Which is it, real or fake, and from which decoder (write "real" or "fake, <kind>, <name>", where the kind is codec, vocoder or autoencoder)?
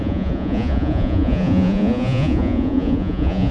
fake, vocoder, Vocos